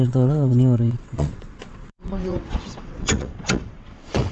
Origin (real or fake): fake